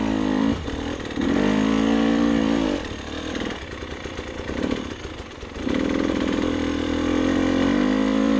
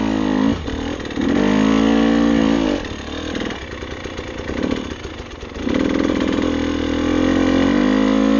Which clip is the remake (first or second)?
first